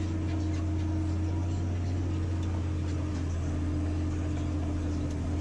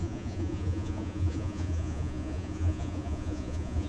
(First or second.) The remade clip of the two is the second